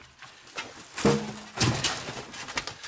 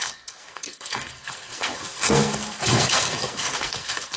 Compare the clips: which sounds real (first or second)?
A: first